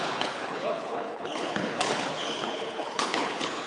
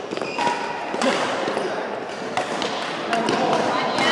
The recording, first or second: second